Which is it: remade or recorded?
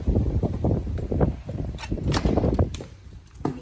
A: remade